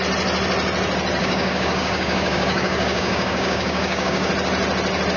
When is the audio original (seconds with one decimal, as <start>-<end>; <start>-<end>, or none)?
0.0-1.2; 4.3-5.2